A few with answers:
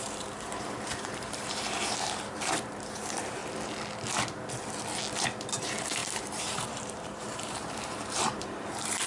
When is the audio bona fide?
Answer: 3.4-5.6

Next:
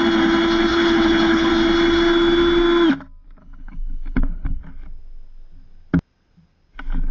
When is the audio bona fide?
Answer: 0.0-0.7; 1.5-3.4; 4.6-7.1

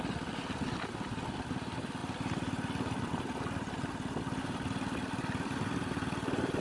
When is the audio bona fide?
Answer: 0.0-6.6

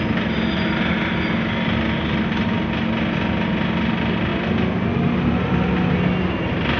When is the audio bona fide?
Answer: 0.0-6.8

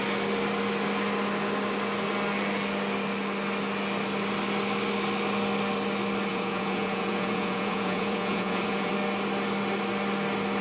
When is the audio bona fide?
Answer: 0.0-6.3; 8.9-10.6